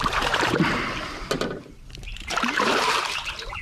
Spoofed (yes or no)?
yes